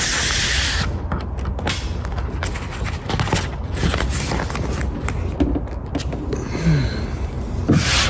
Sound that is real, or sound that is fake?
real